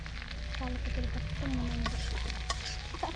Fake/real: real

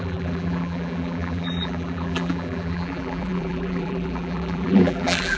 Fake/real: fake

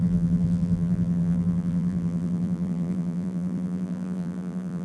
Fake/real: fake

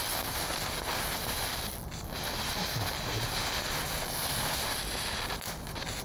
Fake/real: real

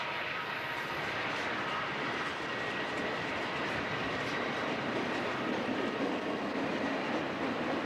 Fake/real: fake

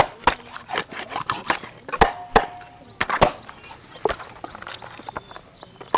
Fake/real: real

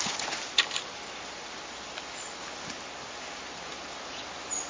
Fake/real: real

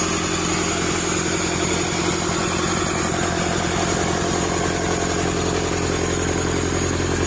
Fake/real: real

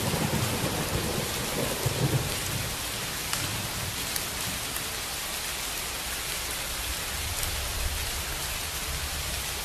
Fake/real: real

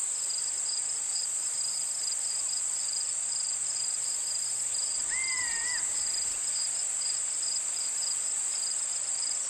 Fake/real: fake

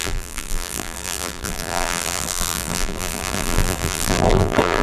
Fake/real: fake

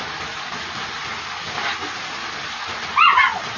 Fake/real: real